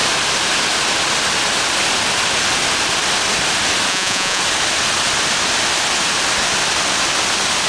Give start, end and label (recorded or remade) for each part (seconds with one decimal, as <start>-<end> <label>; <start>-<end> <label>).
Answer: 0.0-3.9 recorded; 3.9-4.4 remade; 4.4-7.7 recorded